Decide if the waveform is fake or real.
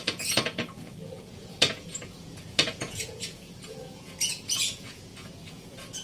fake